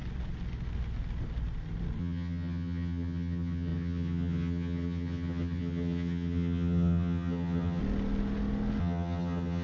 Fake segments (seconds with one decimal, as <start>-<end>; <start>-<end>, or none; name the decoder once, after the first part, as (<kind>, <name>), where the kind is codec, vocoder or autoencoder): 2.0-7.8 (vocoder, HiFi-GAN); 8.8-9.6